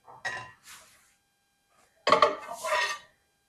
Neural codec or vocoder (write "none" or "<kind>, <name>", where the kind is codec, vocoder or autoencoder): none